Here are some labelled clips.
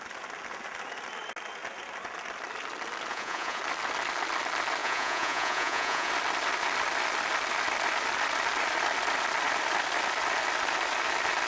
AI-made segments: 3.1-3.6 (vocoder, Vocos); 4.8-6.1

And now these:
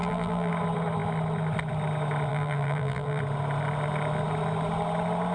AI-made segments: 0.0-0.5 (vocoder, BigVGAN v2); 2.3-3.2

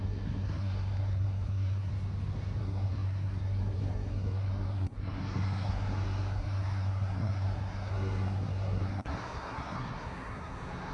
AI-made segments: 0.0-1.9 (codec, SNAC); 2.6-10.9

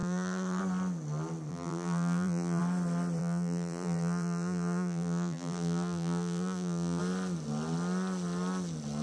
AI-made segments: 0.0-0.6 (vocoder, BigVGAN v2); 1.5-2.6; 3.2-7.0

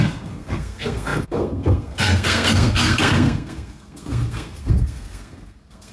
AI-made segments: 0.0-5.9 (codec, SNAC)

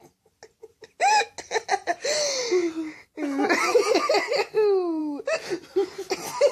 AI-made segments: none

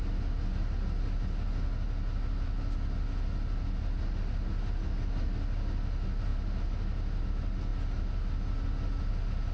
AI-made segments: none

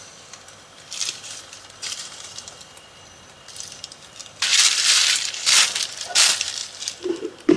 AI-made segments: 0.0-7.6 (vocoder, BigVGAN v2)